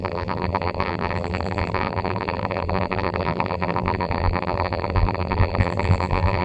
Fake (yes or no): yes